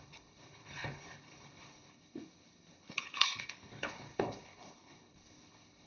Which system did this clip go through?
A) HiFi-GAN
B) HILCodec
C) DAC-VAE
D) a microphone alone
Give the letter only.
B